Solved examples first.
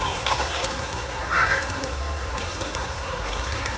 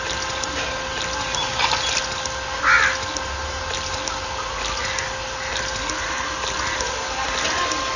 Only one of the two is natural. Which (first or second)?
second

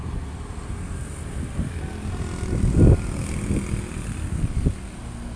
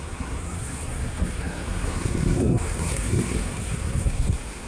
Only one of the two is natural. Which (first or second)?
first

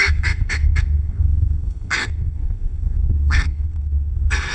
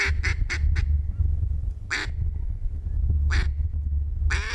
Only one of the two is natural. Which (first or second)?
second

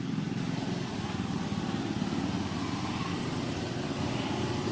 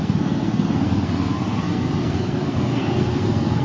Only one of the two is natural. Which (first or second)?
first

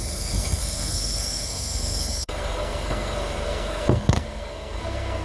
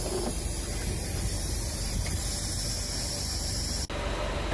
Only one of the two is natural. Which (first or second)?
second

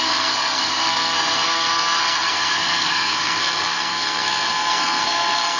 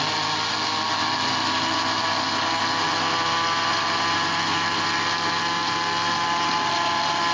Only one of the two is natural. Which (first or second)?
second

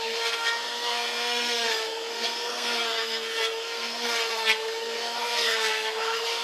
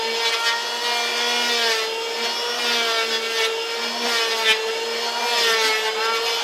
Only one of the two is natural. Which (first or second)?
second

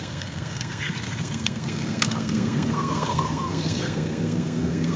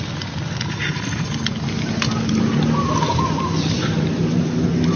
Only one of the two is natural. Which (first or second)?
second